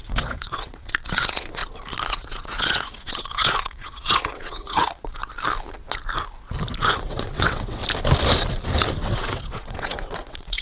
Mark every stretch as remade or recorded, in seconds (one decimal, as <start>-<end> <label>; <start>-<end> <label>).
0.0-1.6 remade; 1.6-2.1 recorded; 2.1-5.2 remade; 5.2-6.8 recorded; 6.8-7.8 remade; 7.8-9.0 recorded; 9.0-10.6 remade